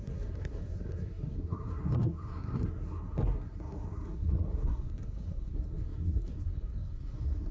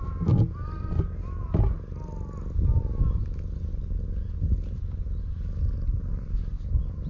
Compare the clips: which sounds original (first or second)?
second